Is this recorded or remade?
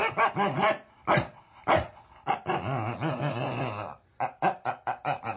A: recorded